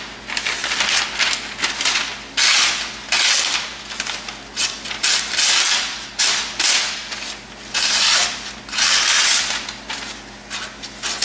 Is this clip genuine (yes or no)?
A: yes